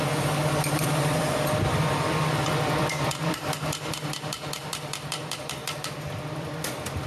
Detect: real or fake fake